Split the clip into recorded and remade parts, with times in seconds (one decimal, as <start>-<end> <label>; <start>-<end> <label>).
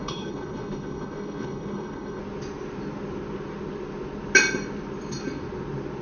0.0-2.2 remade; 2.2-6.0 recorded